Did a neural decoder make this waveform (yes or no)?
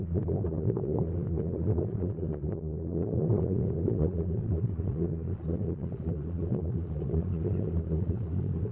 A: yes